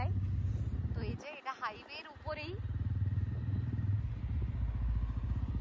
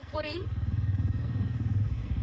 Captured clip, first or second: first